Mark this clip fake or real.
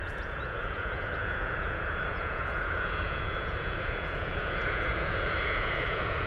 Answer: fake